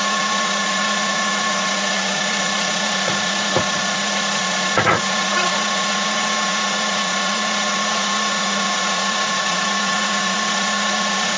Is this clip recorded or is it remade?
remade